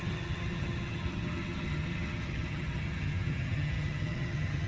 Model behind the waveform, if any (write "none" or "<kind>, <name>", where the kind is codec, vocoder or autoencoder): vocoder, HiFi-GAN